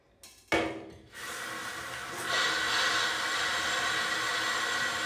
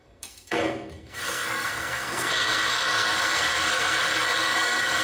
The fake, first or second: second